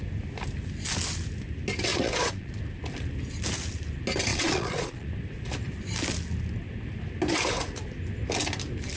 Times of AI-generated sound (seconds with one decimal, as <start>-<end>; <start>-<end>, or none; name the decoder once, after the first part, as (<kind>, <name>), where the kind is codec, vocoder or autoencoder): 1.9-2.5 (vocoder, Vocos); 4.3-5.1